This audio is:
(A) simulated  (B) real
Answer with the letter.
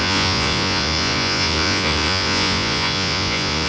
A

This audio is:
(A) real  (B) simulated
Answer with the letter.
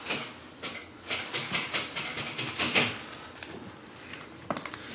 A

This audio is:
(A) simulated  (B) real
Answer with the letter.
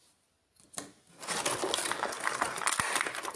B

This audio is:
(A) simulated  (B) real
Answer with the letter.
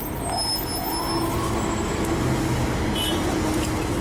B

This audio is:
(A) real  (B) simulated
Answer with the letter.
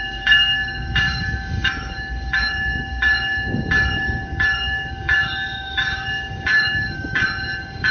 B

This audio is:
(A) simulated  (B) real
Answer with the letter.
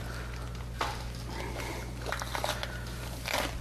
B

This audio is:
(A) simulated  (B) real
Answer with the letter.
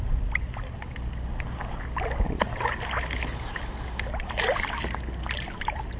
B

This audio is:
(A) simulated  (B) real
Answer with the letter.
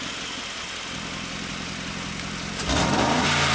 B